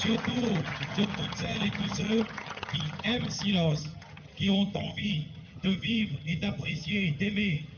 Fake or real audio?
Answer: fake